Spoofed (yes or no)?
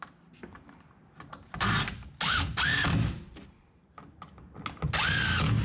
no